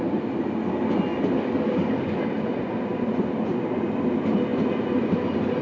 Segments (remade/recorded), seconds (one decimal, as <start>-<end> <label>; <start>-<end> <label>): 0.0-1.1 recorded; 1.1-2.2 remade; 2.2-5.6 recorded